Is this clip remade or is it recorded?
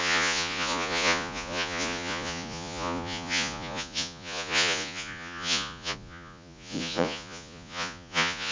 remade